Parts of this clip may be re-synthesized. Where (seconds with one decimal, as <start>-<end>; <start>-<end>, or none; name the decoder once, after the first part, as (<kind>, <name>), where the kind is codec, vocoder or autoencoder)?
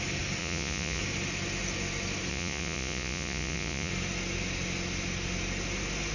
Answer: 0.4-1.0 (vocoder, Vocos); 2.3-3.9